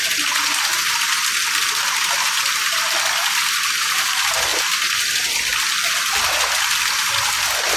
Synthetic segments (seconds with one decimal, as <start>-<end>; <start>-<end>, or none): none